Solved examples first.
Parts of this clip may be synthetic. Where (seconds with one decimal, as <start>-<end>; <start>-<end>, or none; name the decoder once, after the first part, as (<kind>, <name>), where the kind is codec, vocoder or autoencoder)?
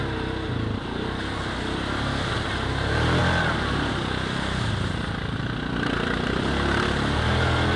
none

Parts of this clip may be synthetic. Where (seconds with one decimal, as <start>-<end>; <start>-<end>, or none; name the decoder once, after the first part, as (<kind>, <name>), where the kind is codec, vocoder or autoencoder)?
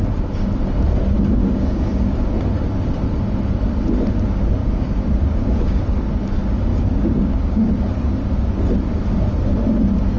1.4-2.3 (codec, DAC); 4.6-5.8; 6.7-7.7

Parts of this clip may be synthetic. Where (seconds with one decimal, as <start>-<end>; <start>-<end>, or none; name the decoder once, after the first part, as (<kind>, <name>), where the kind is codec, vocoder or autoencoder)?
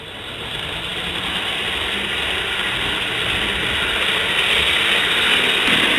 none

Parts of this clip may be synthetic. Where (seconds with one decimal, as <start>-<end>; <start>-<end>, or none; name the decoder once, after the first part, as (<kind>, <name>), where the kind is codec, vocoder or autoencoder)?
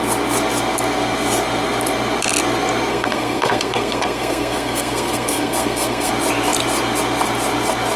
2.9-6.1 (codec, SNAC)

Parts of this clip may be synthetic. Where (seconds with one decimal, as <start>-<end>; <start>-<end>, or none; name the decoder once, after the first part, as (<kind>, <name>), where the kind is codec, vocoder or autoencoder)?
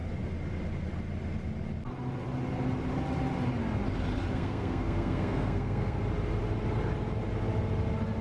4.3-6.0 (codec, SNAC)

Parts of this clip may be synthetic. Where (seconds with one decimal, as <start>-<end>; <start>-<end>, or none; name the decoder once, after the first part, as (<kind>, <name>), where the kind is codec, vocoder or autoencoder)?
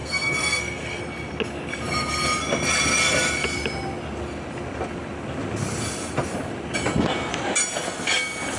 0.0-1.0 (codec, SNAC)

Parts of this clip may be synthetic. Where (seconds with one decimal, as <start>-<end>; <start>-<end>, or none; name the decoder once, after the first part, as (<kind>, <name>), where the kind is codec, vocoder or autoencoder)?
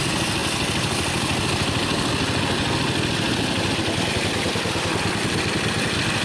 none